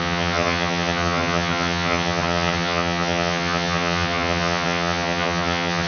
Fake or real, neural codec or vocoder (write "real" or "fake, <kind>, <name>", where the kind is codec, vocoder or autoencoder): fake, vocoder, HiFi-GAN